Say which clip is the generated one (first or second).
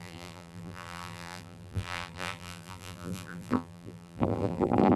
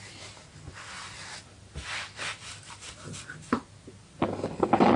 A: first